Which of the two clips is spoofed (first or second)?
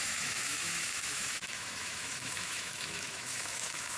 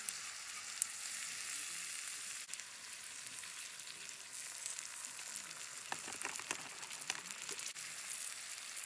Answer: first